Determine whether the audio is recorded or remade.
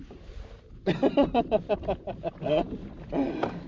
recorded